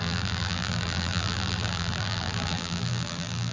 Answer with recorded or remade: remade